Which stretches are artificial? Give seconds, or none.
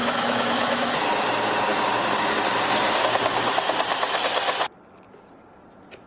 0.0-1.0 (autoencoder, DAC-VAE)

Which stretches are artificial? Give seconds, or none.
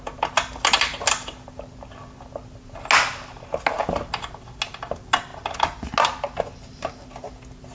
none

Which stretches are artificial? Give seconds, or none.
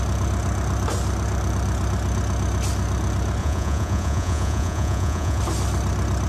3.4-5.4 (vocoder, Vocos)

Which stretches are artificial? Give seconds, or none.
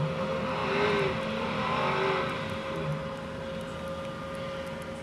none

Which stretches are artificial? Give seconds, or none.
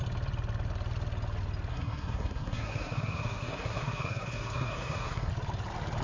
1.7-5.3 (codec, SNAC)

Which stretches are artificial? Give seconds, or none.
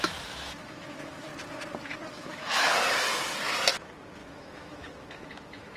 0.0-1.3 (autoencoder, DAC-VAE); 2.1-2.7; 3.8-5.8